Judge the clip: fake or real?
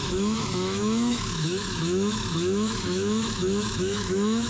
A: fake